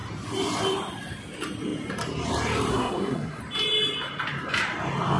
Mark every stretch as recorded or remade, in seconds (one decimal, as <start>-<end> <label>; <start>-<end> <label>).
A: 0.0-2.7 recorded; 2.7-3.4 remade; 3.4-5.2 recorded